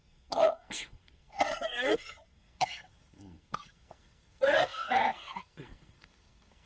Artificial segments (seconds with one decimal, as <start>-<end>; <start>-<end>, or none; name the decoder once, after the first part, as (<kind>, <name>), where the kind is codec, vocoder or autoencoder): 0.0-6.7 (codec, SNAC)